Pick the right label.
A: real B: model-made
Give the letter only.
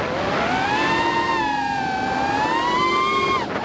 A